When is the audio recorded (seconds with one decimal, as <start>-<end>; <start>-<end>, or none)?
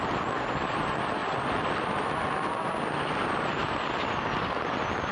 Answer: 0.0-1.2; 2.3-5.1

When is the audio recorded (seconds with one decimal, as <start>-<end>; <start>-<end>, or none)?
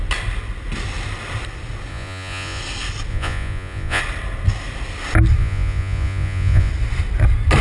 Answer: 0.0-1.9; 2.6-3.1; 4.0-5.4; 6.7-7.6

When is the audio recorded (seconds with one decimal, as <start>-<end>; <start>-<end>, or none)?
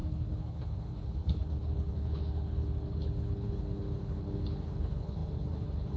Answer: none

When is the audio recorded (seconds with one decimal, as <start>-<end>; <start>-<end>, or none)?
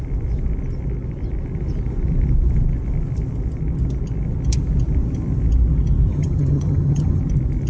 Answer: 0.0-6.1; 7.2-7.7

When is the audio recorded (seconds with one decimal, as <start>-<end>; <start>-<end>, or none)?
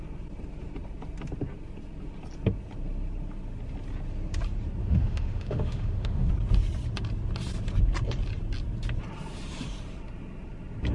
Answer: 0.0-4.8; 6.3-10.9